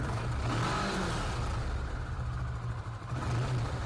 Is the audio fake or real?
real